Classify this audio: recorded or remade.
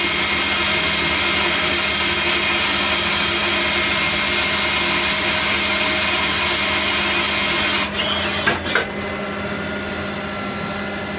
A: recorded